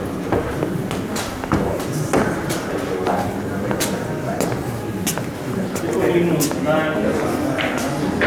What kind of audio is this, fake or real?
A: real